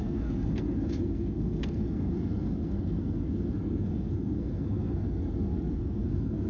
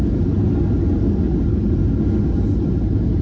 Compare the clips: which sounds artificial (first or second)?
first